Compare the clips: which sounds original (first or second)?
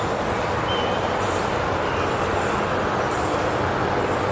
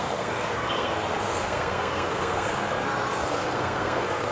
first